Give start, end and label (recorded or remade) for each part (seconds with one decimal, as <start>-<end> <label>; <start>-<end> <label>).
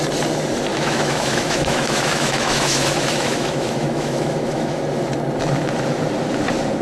0.0-0.7 recorded; 0.7-4.8 remade; 4.8-6.8 recorded